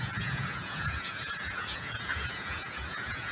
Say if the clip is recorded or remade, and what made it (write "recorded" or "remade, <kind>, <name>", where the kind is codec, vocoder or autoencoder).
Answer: remade, vocoder, Vocos